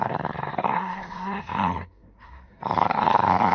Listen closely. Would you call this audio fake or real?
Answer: fake